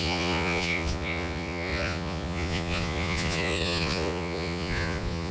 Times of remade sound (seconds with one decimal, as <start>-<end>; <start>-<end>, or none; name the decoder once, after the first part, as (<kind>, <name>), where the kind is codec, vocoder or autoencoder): 0.0-5.3 (vocoder, Vocos)